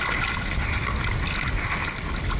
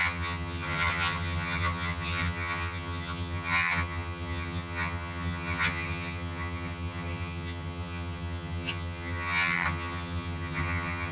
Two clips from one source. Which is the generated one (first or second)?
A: second